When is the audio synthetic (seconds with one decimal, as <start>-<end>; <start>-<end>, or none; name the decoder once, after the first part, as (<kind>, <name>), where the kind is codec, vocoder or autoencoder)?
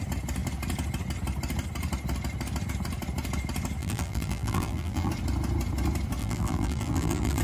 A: 3.8-5.1 (vocoder, BigVGAN v2); 6.2-7.4